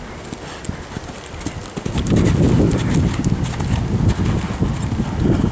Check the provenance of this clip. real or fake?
real